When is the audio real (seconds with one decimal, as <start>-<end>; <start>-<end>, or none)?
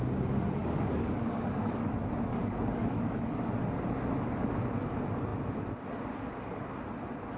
0.0-0.6; 1.9-2.3; 3.5-7.4